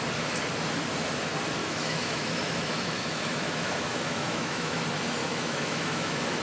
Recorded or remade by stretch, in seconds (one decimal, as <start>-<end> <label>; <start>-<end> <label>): 0.0-1.6 recorded; 1.6-4.8 remade; 4.8-5.2 recorded; 5.2-6.4 remade